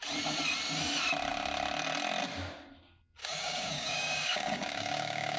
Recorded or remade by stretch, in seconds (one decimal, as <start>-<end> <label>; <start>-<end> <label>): 0.0-3.2 recorded; 3.2-5.4 remade